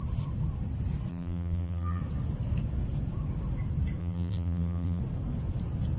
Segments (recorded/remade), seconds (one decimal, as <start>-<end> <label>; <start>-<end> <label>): 0.0-1.1 recorded; 1.1-2.0 remade; 2.0-4.0 recorded; 4.0-5.0 remade; 5.0-6.0 recorded